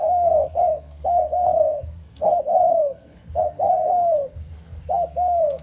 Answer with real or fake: fake